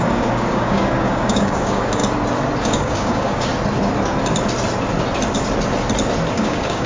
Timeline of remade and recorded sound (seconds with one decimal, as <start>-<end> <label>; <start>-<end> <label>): 0.0-2.0 remade; 2.0-2.6 recorded; 2.6-3.5 remade; 3.5-6.3 recorded; 6.3-6.9 remade